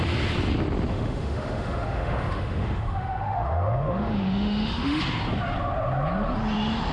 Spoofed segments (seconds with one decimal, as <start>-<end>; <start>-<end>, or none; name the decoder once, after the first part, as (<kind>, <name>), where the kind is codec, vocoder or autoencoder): 0.9-5.0 (autoencoder, DAC-VAE)